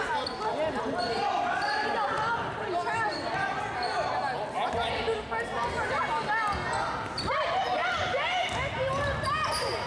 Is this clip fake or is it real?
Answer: real